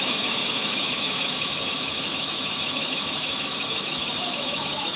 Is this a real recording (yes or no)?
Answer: no